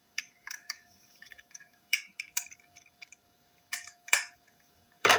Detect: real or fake fake